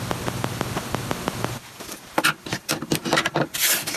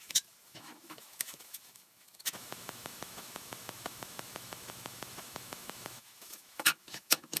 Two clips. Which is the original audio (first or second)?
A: first